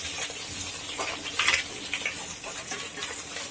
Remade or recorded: recorded